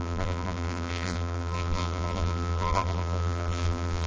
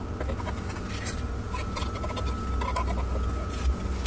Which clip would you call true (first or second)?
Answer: second